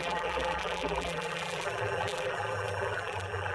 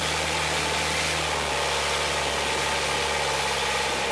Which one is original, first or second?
second